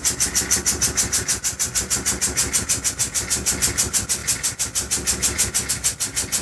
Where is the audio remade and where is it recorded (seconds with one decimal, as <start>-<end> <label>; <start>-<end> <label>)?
0.0-6.4 recorded